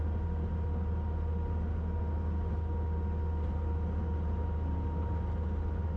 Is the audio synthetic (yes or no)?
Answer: no